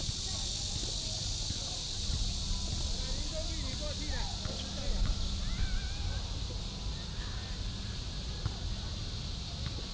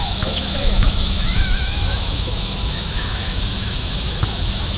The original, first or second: first